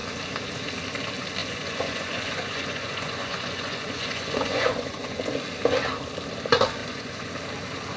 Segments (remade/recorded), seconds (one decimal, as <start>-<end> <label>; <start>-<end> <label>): 0.0-1.4 recorded; 1.4-5.3 remade; 5.3-6.8 recorded; 6.8-7.3 remade; 7.3-8.0 recorded